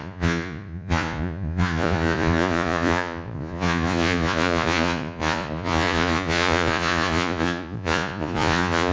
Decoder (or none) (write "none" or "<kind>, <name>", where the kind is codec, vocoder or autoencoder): vocoder, Vocos